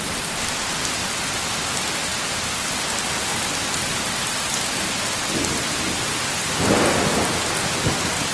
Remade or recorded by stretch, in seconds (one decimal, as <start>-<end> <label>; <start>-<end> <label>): 0.0-8.3 recorded